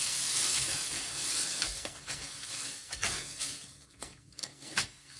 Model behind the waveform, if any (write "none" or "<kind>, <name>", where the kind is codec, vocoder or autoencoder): codec, SNAC